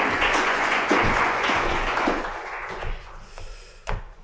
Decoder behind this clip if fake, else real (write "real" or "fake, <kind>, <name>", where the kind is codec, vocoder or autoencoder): fake, vocoder, Vocos